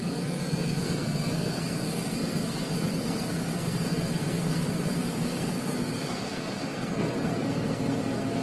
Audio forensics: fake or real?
fake